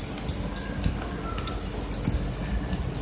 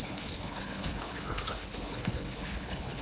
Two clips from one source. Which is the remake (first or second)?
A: second